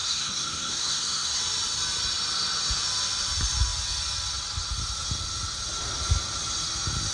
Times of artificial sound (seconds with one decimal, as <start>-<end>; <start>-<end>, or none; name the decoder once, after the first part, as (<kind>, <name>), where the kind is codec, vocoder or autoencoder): 0.0-1.4 (codec, SNAC)